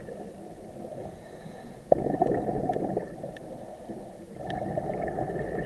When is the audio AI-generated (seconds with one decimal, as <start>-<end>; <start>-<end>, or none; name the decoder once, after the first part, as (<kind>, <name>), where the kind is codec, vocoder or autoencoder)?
1.0-2.3 (vocoder, Vocos)